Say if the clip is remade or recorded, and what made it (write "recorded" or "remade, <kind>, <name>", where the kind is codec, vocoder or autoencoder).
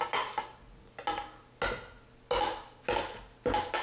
recorded